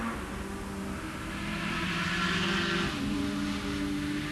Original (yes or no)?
yes